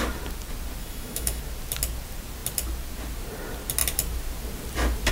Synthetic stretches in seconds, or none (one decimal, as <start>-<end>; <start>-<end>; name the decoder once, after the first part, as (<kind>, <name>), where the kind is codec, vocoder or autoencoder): 0.8-1.4 (autoencoder, DAC-VAE)